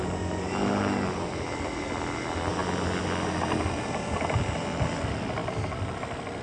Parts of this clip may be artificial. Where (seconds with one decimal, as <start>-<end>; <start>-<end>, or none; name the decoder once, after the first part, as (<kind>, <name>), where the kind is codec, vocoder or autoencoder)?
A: none